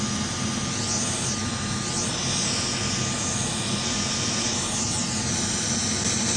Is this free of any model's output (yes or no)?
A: yes